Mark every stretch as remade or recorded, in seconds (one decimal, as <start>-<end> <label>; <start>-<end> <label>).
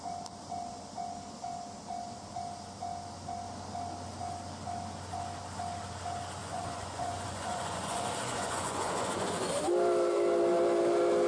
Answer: 0.0-6.4 recorded; 6.4-9.5 remade; 9.5-11.3 recorded